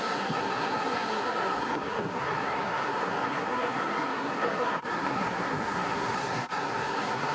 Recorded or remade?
remade